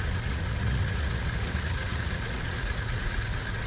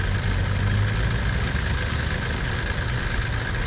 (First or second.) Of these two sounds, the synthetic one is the first